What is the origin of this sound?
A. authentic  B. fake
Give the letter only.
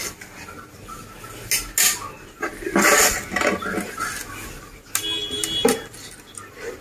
A